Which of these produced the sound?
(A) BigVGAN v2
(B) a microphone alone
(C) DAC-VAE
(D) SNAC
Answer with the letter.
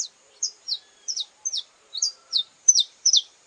A